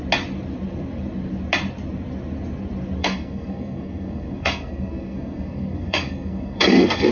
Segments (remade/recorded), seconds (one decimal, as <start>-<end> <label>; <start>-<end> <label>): 0.0-3.0 recorded; 3.0-7.1 remade